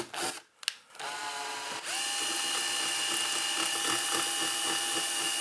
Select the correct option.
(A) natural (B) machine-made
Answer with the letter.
A